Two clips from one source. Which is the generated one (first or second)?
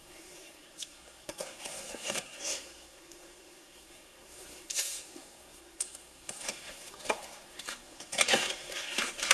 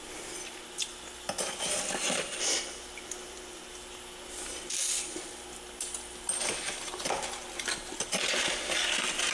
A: first